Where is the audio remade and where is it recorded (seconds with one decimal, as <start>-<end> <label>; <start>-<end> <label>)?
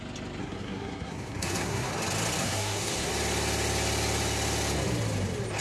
0.0-0.4 recorded; 0.4-1.9 remade; 1.9-2.4 recorded; 2.4-3.1 remade; 3.1-5.6 recorded